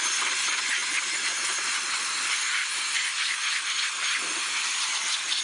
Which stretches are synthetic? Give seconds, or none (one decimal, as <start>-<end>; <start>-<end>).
0.0-0.8; 1.8-5.4